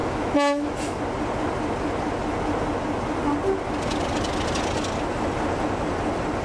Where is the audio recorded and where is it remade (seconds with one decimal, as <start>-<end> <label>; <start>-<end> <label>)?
0.0-1.0 remade; 1.0-6.4 recorded